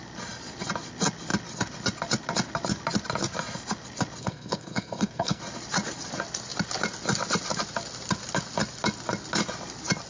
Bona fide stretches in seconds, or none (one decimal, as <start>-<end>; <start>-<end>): 0.0-4.2; 5.4-10.1